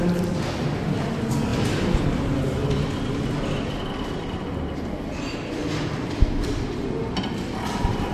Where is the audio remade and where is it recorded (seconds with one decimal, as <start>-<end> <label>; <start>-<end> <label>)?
0.0-5.6 recorded; 5.6-6.2 remade; 6.2-8.1 recorded